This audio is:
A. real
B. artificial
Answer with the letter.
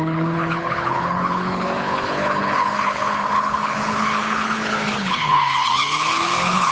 B